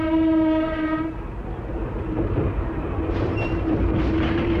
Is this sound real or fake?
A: fake